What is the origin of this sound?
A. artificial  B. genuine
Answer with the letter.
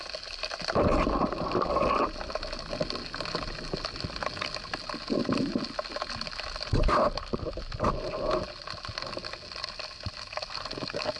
B